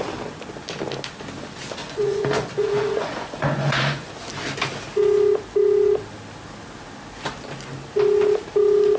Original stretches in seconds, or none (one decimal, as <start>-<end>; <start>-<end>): 0.0-1.8; 4.1-9.0